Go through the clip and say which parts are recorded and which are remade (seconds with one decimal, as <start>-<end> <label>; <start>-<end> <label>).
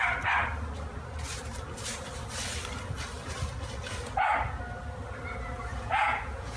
0.0-5.7 recorded; 5.7-6.6 remade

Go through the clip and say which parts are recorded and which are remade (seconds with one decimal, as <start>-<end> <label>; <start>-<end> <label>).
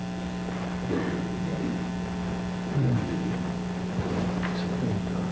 0.0-5.3 recorded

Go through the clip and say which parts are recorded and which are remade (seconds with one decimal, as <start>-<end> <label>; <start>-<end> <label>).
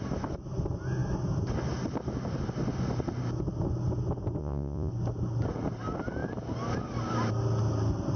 0.0-4.4 recorded; 4.4-4.9 remade; 4.9-8.2 recorded